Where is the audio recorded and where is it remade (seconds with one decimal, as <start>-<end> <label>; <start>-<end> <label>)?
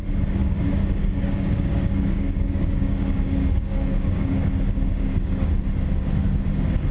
0.0-0.4 recorded; 0.4-4.5 remade; 4.5-4.9 recorded; 4.9-5.5 remade; 5.5-6.9 recorded